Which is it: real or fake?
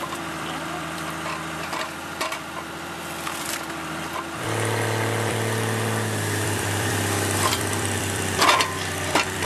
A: fake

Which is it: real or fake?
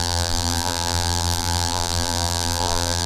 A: fake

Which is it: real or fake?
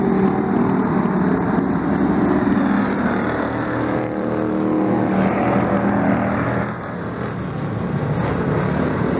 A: real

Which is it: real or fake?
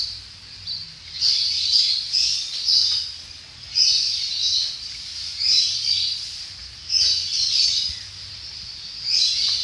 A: fake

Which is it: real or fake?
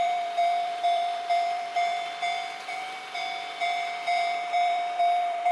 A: fake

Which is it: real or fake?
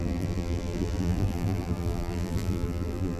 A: fake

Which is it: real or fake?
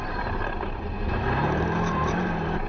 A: fake